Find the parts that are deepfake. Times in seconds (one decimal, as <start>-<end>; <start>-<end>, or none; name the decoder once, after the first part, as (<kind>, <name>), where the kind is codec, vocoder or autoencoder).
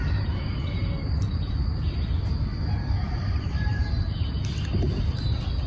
3.2-4.4 (vocoder, BigVGAN v2)